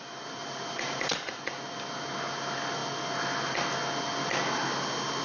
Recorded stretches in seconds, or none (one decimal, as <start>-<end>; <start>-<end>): 0.0-0.4; 1.4-5.2